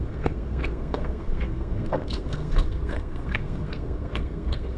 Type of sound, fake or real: fake